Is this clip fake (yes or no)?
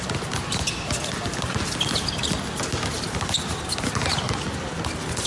no